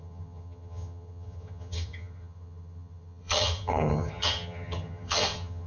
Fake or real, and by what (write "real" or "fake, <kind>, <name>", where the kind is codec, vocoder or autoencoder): fake, vocoder, HiFi-GAN